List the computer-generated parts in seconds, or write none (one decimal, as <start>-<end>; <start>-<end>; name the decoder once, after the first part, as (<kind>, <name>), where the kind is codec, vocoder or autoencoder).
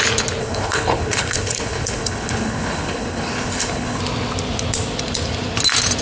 0.4-4.0 (codec, HILCodec)